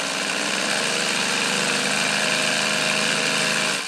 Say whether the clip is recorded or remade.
recorded